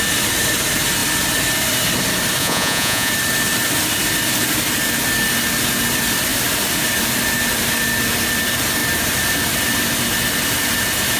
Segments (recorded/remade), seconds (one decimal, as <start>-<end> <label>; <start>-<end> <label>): 0.0-2.4 recorded; 2.4-3.1 remade; 3.1-11.2 recorded